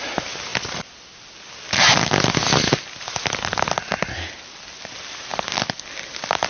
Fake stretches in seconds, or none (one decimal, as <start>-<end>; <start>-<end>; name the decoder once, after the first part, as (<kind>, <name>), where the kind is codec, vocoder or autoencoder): none